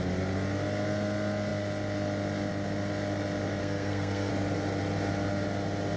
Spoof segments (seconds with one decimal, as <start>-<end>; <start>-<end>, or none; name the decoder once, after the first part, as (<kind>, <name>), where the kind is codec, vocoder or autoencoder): 3.6-4.3 (codec, SNAC)

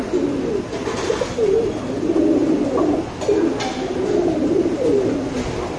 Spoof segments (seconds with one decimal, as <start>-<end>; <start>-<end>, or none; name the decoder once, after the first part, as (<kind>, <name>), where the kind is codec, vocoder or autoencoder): none

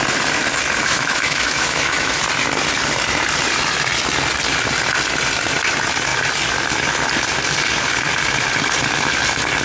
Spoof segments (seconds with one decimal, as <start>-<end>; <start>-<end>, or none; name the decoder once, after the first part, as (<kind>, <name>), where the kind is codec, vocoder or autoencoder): 0.8-2.2 (autoencoder, DAC-VAE)

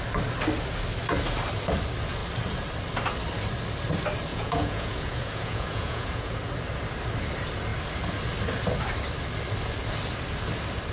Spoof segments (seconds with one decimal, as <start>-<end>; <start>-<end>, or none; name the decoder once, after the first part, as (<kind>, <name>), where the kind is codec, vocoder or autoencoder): 4.3-6.3 (vocoder, Vocos)

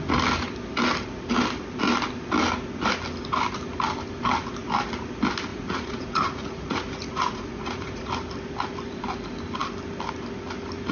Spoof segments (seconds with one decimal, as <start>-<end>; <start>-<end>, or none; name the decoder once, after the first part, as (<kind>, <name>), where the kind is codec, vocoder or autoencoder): 5.5-8.1 (vocoder, Vocos)

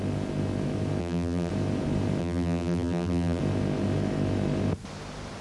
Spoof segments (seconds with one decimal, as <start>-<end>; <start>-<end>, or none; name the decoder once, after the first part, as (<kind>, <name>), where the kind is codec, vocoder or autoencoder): 1.0-1.5 (vocoder, BigVGAN v2); 2.2-3.4

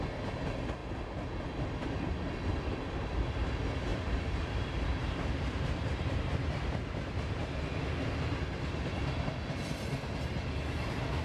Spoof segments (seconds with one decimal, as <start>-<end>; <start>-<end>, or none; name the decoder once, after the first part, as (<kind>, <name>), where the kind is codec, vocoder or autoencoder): 3.9-7.5 (vocoder, BigVGAN v2)

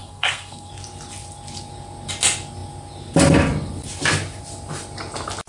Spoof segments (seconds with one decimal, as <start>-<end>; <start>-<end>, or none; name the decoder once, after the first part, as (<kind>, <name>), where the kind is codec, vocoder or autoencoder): 0.0-0.7 (codec, SNAC)